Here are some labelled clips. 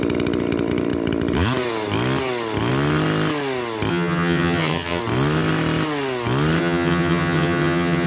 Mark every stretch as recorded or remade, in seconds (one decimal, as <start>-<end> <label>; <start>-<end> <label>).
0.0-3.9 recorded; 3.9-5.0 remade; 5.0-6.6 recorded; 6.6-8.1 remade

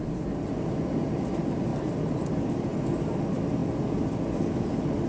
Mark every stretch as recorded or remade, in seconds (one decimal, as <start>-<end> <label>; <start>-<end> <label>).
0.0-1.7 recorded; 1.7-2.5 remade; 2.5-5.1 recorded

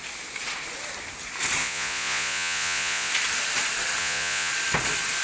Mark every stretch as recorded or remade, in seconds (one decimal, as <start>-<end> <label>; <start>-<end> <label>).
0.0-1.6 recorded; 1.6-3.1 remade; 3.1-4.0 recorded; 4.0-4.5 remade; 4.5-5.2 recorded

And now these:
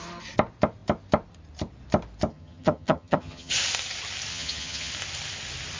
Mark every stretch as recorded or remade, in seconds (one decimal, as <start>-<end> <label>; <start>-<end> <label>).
0.0-2.3 recorded; 2.3-3.5 remade; 3.5-4.3 recorded; 4.3-4.9 remade; 4.9-5.8 recorded